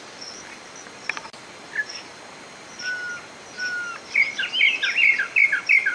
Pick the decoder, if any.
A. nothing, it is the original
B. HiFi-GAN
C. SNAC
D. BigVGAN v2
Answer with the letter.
A